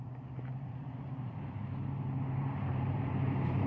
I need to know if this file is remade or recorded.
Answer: remade